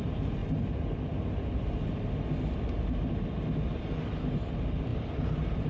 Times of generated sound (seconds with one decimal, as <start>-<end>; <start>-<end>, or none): none